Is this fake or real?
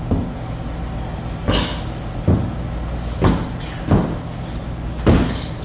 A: real